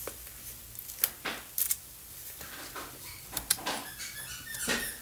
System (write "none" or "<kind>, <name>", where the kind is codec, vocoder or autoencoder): none